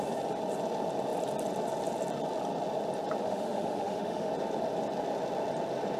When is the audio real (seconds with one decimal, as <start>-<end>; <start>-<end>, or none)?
0.0-3.2; 4.3-6.0